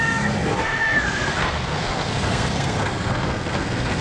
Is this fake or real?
fake